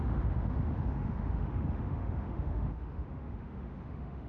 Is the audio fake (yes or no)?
yes